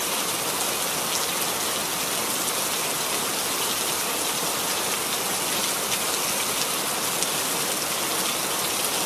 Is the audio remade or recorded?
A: recorded